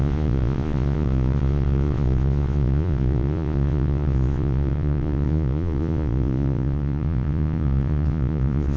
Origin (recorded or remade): remade